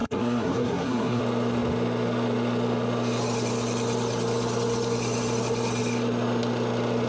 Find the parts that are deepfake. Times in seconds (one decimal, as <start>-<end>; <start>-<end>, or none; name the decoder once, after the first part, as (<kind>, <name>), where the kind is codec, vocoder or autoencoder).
0.0-1.2 (codec, SNAC)